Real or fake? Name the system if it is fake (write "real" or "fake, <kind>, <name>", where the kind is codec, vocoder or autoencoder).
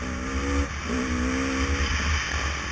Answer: real